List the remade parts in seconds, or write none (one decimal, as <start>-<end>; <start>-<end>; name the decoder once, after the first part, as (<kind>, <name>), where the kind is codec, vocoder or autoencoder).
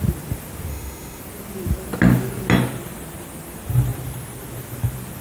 0.7-1.2 (autoencoder, DAC-VAE)